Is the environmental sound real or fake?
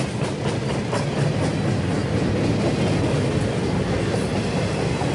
real